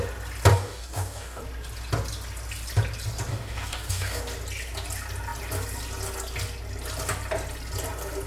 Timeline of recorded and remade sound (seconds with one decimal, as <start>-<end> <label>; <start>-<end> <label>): 0.0-0.5 recorded; 0.5-1.4 remade; 1.4-3.3 recorded; 3.3-4.2 remade; 4.2-8.3 recorded